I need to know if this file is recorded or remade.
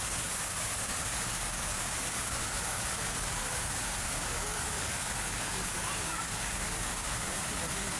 remade